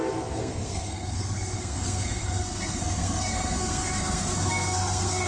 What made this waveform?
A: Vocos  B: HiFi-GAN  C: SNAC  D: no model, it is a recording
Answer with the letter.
C